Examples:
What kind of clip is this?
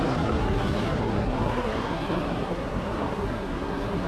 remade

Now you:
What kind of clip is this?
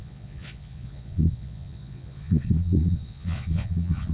remade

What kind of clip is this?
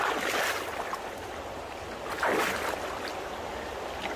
recorded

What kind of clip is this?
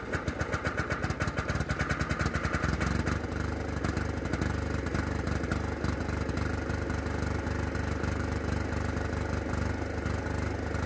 recorded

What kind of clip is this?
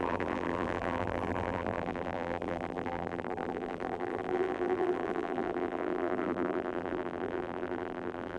remade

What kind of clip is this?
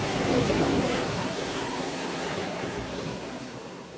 remade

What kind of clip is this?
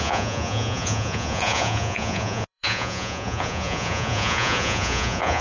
remade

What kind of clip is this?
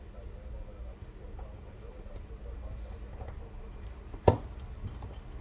recorded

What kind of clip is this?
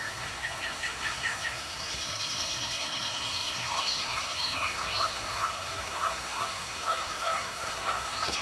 remade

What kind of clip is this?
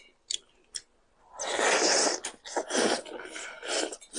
recorded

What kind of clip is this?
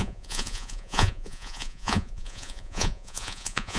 remade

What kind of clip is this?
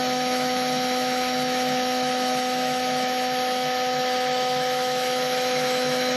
remade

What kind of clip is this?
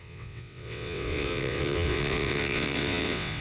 remade